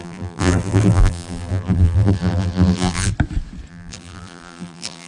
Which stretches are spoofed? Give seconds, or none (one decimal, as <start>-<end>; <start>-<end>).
0.0-3.1; 3.7-5.1